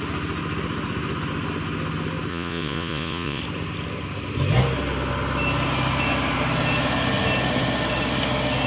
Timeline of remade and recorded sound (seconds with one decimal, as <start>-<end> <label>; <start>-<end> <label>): 0.0-2.3 recorded; 2.3-3.4 remade; 3.4-8.7 recorded